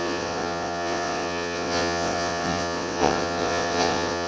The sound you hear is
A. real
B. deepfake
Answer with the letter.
B